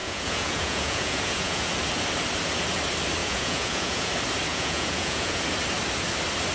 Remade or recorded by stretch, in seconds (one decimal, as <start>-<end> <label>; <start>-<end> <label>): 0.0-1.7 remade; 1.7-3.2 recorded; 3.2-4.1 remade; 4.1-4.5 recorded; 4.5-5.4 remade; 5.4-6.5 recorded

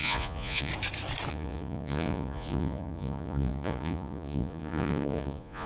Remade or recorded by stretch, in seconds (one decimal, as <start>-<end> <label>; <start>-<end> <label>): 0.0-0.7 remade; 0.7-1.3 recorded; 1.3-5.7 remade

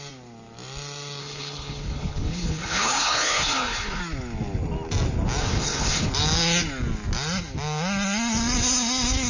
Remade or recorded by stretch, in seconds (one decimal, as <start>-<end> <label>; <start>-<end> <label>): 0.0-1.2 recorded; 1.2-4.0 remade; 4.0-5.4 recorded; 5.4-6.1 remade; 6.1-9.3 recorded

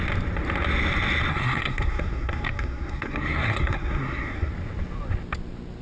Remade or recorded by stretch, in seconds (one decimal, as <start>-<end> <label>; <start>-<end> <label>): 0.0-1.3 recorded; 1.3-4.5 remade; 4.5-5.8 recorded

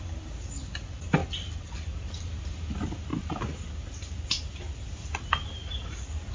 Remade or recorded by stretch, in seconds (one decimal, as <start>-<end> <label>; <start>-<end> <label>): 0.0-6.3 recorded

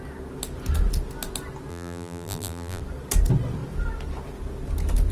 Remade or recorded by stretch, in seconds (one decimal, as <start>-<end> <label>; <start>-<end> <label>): 0.0-1.7 recorded; 1.7-2.8 remade; 2.8-5.1 recorded